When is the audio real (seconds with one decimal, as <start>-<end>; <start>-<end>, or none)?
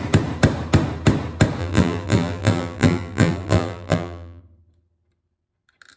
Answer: 0.0-1.6; 4.4-6.0